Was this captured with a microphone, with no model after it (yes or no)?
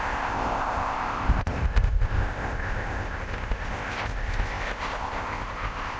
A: no